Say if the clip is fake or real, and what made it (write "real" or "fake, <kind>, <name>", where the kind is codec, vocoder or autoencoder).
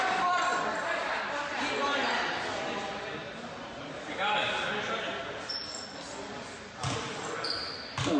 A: real